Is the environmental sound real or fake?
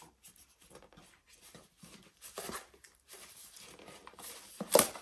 fake